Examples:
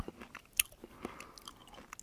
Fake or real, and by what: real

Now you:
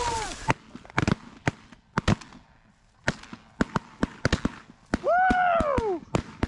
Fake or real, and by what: real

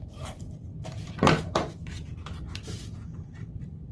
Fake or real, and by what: fake, vocoder, BigVGAN v2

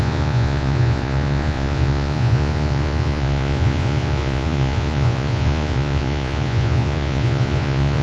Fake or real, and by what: fake, vocoder, Vocos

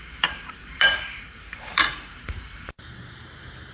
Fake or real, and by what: fake, vocoder, BigVGAN v2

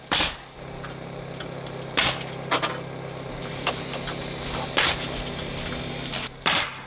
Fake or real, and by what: real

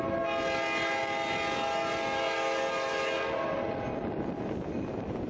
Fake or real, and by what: real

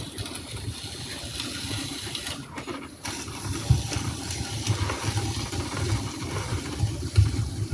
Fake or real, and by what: real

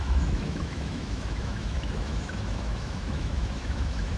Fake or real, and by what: fake, autoencoder, DAC-VAE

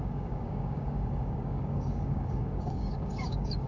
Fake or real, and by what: fake, codec, DAC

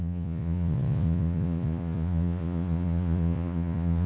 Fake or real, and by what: fake, vocoder, Vocos